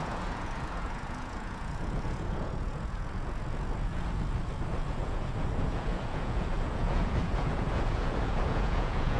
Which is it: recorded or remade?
remade